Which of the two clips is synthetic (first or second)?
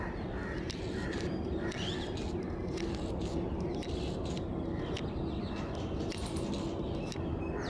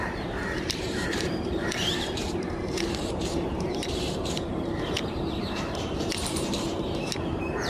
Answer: second